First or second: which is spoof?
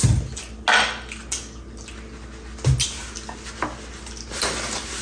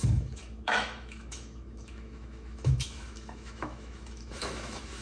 second